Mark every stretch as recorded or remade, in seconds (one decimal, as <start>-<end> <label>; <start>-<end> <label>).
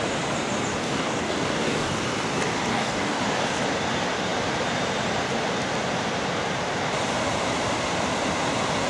0.0-0.7 recorded; 0.7-2.0 remade; 2.0-2.7 recorded; 2.7-3.2 remade; 3.2-8.9 recorded